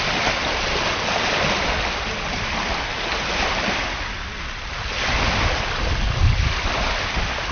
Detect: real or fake real